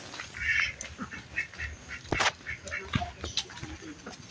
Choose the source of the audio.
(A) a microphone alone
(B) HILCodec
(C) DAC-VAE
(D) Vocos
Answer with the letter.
A